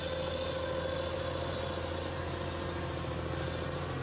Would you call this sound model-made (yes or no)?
no